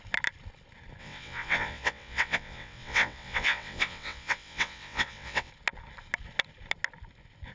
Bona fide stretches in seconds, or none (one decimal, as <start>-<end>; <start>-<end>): 0.0-1.0; 5.5-7.5